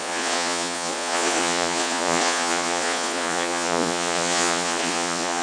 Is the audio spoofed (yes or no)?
yes